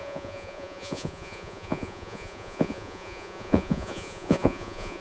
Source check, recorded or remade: remade